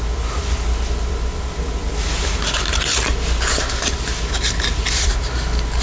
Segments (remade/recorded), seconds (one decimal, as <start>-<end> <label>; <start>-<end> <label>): 0.0-5.8 recorded